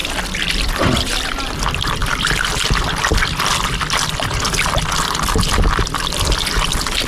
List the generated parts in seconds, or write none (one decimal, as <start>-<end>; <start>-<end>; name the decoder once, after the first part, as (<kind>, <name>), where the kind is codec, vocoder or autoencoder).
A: 0.0-0.6 (vocoder, BigVGAN v2)